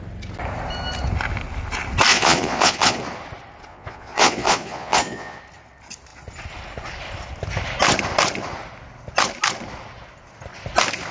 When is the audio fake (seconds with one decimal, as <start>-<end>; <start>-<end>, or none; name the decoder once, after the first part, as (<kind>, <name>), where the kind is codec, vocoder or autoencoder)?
2.1-3.0 (vocoder, Vocos); 3.7-5.4